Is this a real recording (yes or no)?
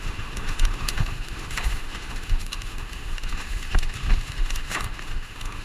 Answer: no